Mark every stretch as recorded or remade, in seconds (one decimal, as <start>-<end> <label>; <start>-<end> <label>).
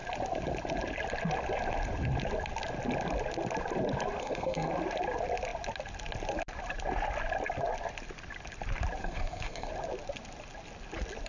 0.0-4.2 recorded; 4.2-4.7 remade; 4.7-9.0 recorded; 9.0-9.7 remade; 9.7-11.3 recorded